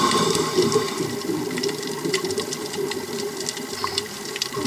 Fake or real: fake